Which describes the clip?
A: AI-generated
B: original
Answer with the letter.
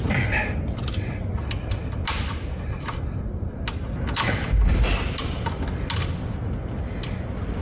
B